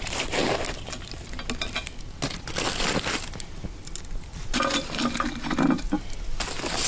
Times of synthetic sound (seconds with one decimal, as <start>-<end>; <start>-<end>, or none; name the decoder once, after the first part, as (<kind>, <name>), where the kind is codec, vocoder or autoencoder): none